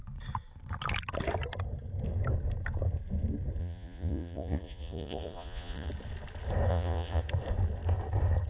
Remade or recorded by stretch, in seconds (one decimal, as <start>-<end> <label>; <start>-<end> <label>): 0.0-3.6 recorded; 3.6-5.9 remade; 5.9-6.7 recorded; 6.7-7.2 remade; 7.2-8.5 recorded